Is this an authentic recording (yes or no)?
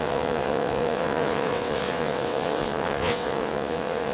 no